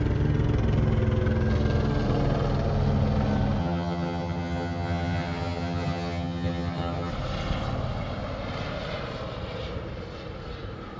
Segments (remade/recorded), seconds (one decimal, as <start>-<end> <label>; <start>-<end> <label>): 0.0-3.6 recorded; 3.6-7.1 remade; 7.1-11.0 recorded